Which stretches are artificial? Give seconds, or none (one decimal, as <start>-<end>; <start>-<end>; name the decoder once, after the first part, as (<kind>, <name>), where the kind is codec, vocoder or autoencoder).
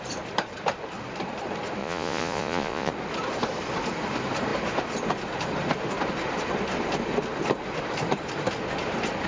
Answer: 1.8-2.9 (vocoder, Vocos)